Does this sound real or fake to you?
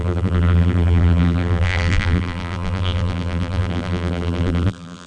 fake